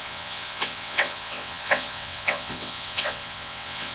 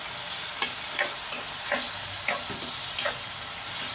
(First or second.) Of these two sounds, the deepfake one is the first